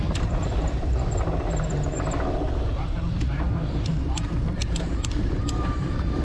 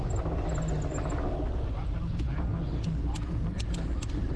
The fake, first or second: first